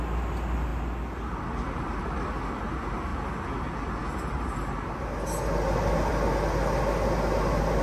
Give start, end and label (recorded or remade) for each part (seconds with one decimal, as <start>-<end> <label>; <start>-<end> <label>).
0.0-7.8 recorded